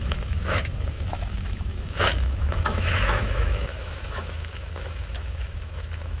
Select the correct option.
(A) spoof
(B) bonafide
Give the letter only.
A